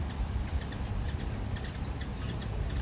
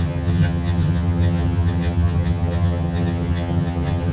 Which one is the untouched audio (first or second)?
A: first